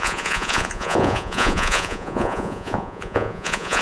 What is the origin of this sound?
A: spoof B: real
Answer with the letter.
A